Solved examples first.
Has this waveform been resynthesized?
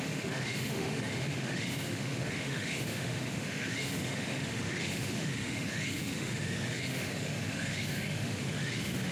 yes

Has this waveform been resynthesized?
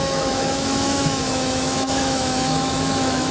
yes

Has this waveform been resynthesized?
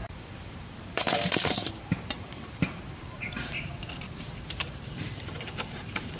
yes